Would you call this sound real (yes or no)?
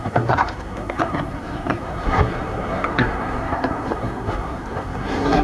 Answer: no